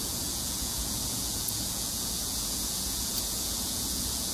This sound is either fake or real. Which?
fake